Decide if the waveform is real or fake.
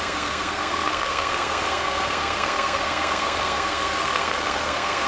fake